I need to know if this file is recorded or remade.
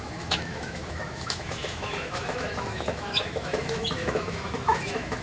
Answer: remade